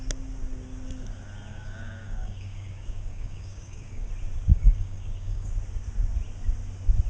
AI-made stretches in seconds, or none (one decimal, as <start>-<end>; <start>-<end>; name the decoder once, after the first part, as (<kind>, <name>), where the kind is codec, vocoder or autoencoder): 1.5-4.1 (codec, DAC); 4.5-5.5